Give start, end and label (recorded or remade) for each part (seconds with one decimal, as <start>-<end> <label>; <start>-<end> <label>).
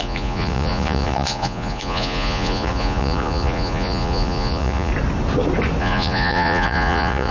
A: 0.0-4.9 remade; 4.9-5.8 recorded; 5.8-7.3 remade